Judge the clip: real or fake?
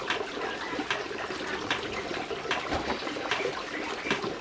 real